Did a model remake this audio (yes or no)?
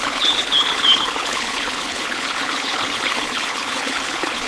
yes